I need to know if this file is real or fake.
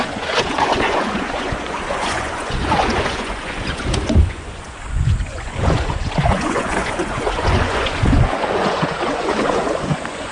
fake